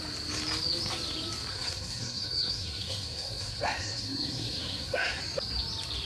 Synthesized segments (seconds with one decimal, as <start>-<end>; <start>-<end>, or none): 1.5-5.2